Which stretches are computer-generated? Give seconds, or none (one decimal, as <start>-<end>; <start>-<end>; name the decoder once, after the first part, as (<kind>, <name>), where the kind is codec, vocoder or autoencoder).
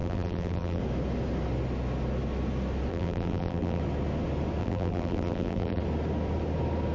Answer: 0.0-0.8 (vocoder, BigVGAN v2); 2.9-3.8; 4.6-5.8